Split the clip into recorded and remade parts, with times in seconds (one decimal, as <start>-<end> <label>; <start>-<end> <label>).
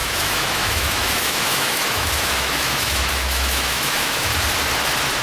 0.0-4.3 remade; 4.3-5.2 recorded